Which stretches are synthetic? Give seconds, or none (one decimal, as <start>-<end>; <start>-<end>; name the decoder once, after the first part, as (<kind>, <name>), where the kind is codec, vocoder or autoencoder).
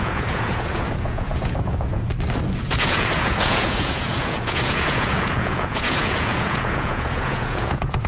0.0-2.1 (vocoder, Vocos); 2.6-8.1